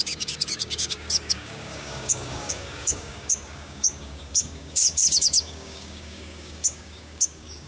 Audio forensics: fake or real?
fake